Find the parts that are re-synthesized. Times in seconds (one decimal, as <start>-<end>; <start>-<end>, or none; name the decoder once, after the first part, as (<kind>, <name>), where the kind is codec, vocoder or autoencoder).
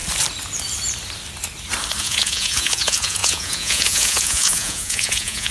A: 2.0-5.5 (vocoder, Vocos)